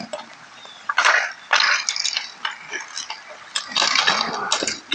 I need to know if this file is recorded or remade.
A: recorded